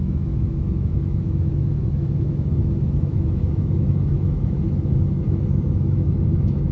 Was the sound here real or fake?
fake